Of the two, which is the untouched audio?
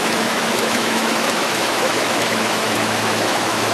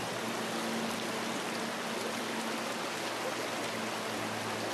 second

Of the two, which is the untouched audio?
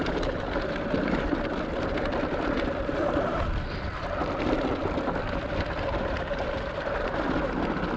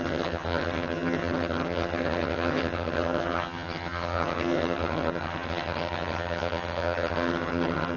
first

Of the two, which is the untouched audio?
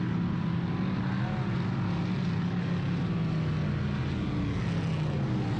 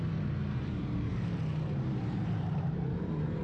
first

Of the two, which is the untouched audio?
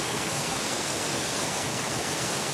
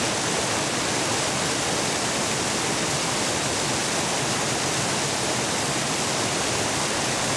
second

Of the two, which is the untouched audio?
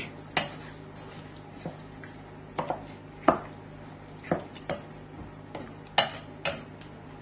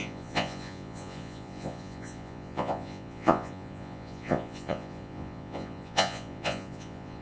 first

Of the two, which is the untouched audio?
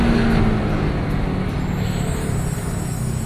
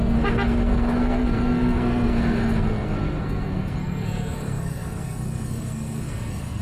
first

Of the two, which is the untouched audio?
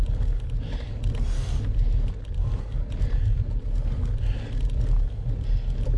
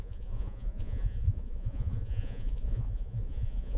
first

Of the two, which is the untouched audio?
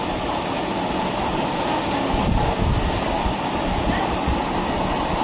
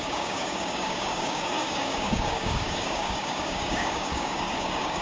first